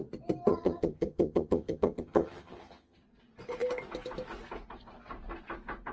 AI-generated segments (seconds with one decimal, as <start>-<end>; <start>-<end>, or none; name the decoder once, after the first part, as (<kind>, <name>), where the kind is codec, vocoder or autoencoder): 0.5-3.0 (vocoder, HiFi-GAN)